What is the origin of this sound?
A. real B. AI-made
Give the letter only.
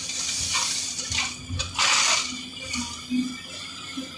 A